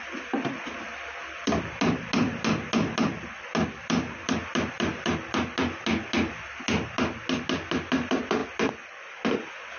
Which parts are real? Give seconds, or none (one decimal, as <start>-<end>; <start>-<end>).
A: 0.0-9.8